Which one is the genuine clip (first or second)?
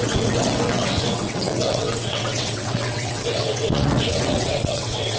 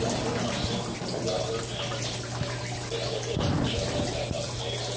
second